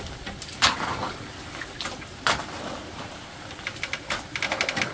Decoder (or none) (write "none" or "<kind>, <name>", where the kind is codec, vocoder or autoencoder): none